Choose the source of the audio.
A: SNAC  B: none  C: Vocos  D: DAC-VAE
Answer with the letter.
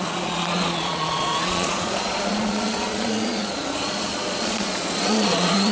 C